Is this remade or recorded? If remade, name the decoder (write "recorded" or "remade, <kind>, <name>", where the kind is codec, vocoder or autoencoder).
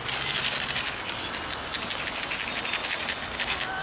recorded